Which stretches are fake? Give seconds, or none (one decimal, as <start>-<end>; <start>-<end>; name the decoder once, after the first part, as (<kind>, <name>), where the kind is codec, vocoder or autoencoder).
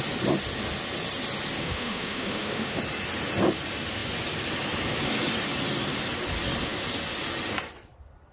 1.6-2.8 (autoencoder, DAC-VAE)